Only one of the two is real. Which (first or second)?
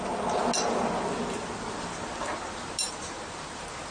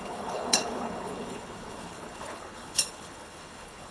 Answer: first